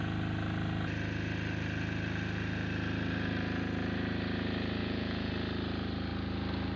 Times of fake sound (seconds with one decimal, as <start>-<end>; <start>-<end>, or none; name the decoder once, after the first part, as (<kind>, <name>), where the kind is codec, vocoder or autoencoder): 4.8-5.3 (vocoder, Vocos)